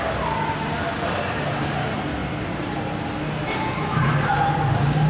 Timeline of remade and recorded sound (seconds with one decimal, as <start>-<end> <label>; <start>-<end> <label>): 0.0-5.1 recorded